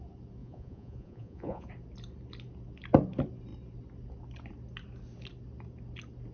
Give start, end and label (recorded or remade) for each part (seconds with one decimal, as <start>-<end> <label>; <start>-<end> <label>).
0.0-0.4 recorded; 0.4-1.7 remade; 1.7-6.3 recorded